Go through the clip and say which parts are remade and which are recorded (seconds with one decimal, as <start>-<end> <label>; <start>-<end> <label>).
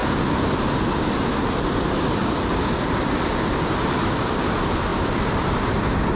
0.0-6.2 recorded